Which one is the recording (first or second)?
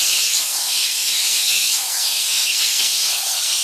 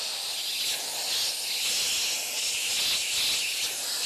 second